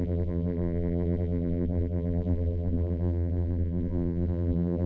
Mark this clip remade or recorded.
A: remade